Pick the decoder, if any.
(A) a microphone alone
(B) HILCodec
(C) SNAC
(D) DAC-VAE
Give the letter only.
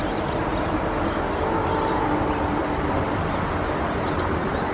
A